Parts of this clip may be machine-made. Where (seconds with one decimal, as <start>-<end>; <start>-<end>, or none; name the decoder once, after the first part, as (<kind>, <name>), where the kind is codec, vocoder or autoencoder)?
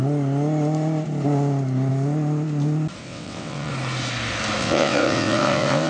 3.0-3.7 (vocoder, WaveNeXt); 4.6-5.9